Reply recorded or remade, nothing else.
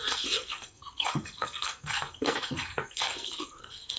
remade